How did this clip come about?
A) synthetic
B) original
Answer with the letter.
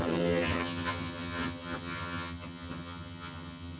A